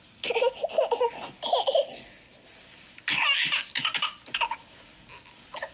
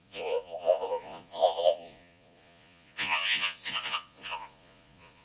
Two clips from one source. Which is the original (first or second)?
first